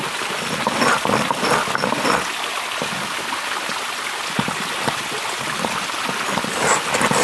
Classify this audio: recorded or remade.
recorded